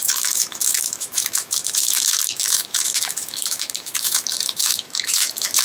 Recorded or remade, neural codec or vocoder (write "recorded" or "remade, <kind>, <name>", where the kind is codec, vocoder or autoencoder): remade, autoencoder, DAC-VAE